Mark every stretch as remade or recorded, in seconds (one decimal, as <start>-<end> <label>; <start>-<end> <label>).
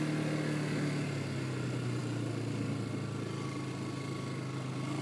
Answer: 0.0-5.0 recorded